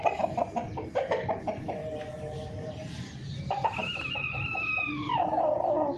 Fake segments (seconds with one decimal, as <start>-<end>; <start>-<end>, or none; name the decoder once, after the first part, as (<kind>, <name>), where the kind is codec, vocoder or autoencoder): none